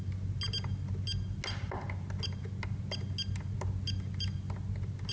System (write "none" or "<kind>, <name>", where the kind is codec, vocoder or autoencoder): none